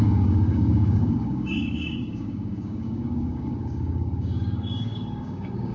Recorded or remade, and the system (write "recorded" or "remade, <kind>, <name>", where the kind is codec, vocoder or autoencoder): remade, codec, DAC